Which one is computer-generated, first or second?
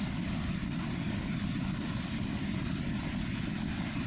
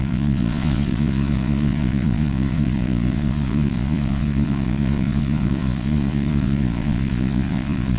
second